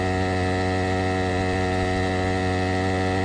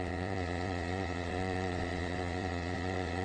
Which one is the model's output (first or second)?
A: second